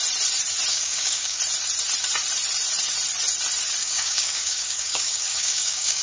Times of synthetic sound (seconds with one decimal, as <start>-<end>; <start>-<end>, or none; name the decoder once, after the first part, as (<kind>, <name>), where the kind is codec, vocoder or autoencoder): 0.7-1.4 (codec, DAC); 3.8-6.0